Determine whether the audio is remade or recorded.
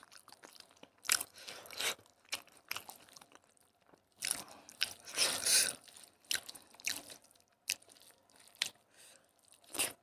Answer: recorded